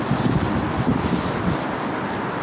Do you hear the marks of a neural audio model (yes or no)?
no